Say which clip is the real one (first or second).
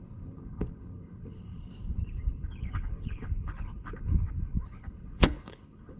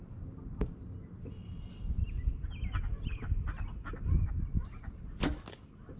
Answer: second